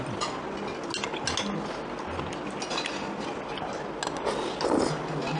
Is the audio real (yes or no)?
yes